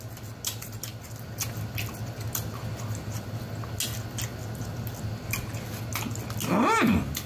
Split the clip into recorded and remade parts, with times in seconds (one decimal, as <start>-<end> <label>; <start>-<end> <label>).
0.0-7.3 recorded